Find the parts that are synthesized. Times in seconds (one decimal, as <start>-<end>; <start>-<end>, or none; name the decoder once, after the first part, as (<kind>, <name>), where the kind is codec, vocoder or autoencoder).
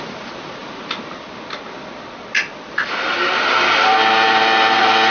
none